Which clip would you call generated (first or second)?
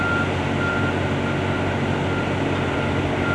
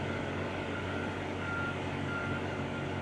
second